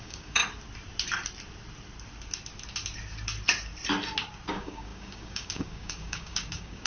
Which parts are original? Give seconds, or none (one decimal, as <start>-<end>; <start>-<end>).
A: 0.4-4.5